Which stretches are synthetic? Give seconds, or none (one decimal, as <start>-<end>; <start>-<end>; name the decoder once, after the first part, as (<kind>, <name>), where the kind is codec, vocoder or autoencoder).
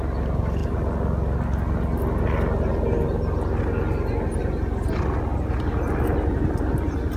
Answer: none